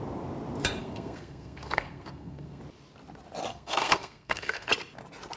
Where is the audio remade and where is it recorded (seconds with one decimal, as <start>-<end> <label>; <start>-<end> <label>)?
0.0-0.8 recorded; 0.8-2.6 remade; 2.6-3.5 recorded; 3.5-4.7 remade; 4.7-5.4 recorded